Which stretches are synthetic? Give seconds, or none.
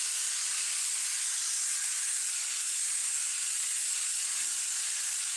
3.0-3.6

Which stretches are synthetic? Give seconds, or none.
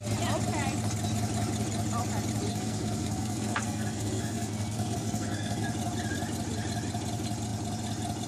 2.5-5.7